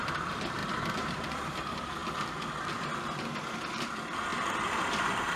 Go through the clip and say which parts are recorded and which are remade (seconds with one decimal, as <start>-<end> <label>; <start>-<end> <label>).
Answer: 0.0-0.6 recorded; 0.6-1.6 remade; 1.6-2.0 recorded; 2.0-2.9 remade; 2.9-5.4 recorded